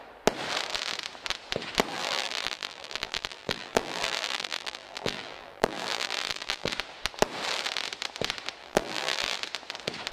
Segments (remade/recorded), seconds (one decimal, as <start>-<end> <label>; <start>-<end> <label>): 0.0-1.9 recorded; 1.9-6.7 remade; 6.7-8.6 recorded; 8.6-9.4 remade; 9.4-10.1 recorded